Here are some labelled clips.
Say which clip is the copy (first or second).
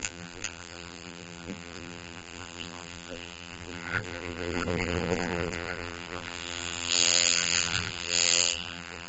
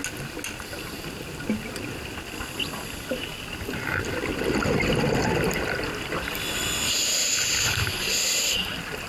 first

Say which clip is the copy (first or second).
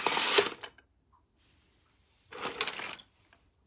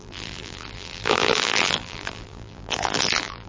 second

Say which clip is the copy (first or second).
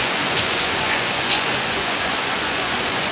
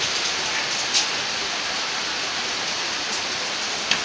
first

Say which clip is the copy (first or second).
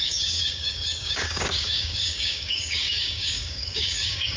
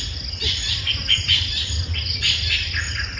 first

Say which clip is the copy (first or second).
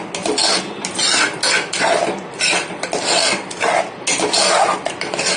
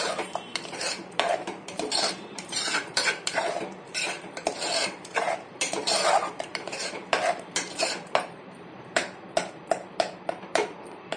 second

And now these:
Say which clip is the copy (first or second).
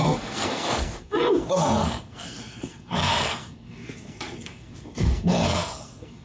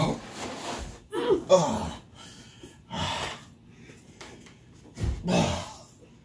first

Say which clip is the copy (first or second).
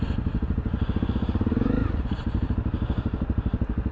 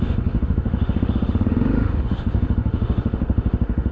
second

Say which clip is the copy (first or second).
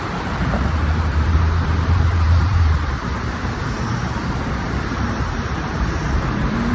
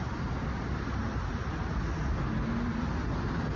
first